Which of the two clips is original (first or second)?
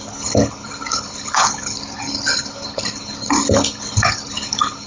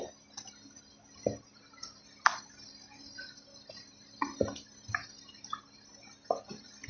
second